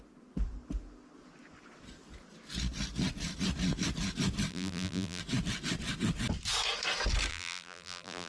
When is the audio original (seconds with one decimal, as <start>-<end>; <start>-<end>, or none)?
0.0-4.5; 5.2-7.3